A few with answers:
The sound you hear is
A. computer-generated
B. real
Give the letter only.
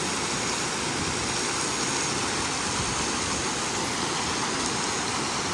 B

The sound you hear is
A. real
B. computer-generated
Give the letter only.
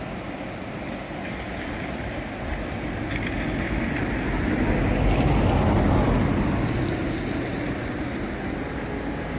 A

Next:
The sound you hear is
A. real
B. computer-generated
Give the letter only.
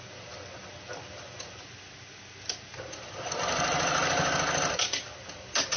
A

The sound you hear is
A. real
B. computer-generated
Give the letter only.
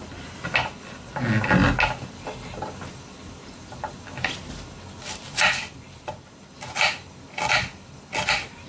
A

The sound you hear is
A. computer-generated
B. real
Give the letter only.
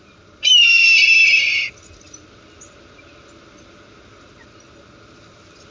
B